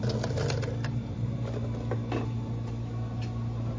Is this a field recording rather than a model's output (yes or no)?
yes